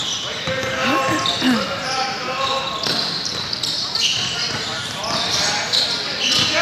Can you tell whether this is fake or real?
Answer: real